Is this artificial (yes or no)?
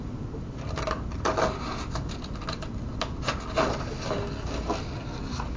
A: no